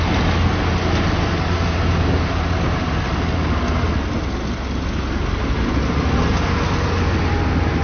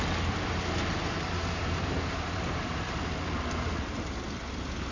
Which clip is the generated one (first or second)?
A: second